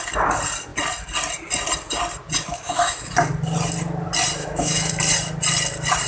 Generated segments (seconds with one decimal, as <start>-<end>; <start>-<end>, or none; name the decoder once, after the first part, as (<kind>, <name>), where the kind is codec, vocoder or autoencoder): 2.5-3.1 (autoencoder, DAC-VAE); 4.4-4.9

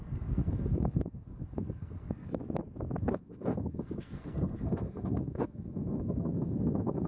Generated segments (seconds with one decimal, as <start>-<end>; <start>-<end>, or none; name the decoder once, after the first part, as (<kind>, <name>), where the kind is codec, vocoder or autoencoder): 0.0-2.4 (codec, SNAC); 3.0-7.1

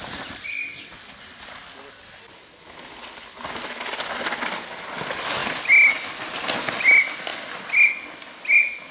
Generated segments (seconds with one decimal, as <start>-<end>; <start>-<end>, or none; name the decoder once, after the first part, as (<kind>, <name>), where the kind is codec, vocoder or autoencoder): none

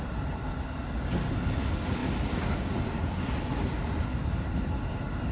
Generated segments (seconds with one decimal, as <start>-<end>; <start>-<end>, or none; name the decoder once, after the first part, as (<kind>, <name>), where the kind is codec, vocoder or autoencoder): none

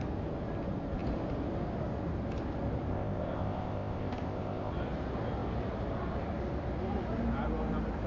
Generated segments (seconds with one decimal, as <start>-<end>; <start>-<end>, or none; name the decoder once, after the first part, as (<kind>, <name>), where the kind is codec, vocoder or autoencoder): 2.9-4.7 (codec, ZipCodec)